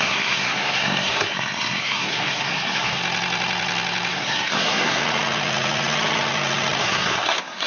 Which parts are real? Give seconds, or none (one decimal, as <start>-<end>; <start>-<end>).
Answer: 3.0-4.1; 5.0-6.8